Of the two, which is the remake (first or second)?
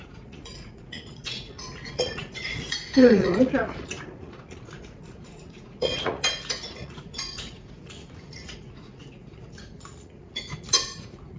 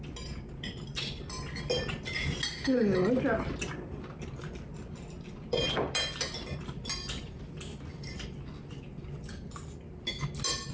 first